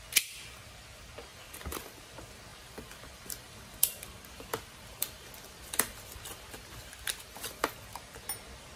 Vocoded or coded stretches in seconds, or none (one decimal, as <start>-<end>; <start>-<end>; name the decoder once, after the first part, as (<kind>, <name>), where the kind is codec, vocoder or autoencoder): 1.3-2.0 (vocoder, BigVGAN v2); 2.5-7.7